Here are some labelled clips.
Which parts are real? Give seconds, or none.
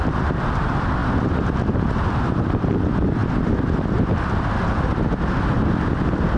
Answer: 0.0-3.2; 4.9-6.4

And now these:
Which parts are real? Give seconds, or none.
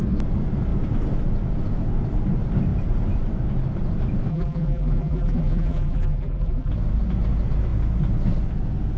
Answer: 0.0-4.3; 6.7-9.0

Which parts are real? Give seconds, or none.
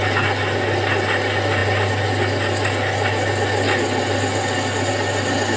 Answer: 0.0-5.6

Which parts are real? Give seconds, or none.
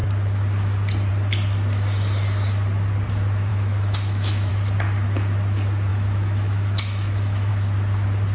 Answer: 0.0-3.5; 4.5-5.9; 7.5-8.3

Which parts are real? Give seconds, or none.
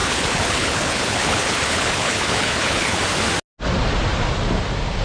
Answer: 3.0-5.0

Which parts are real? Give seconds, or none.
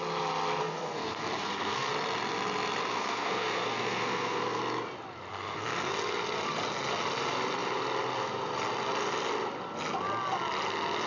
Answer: 0.0-0.6; 1.9-2.9; 4.6-5.3; 5.9-11.1